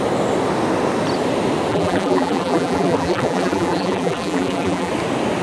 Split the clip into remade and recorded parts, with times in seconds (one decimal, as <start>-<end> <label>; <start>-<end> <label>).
0.0-1.7 recorded; 1.7-4.9 remade; 4.9-5.4 recorded